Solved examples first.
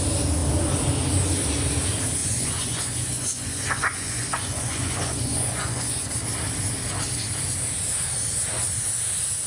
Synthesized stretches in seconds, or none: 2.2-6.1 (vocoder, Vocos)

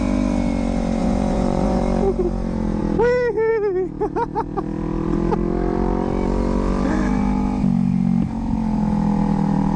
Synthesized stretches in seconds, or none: 1.0-1.8 (vocoder, Vocos)

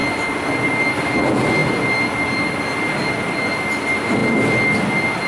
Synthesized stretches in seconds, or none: none